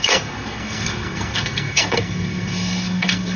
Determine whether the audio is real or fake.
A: fake